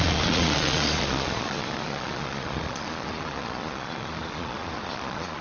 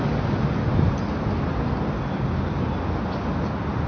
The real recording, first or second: second